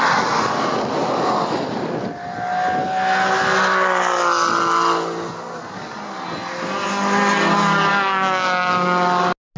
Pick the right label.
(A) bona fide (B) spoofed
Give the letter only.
A